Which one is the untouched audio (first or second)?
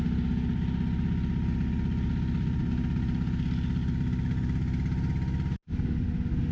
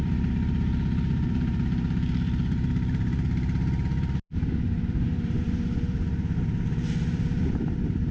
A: first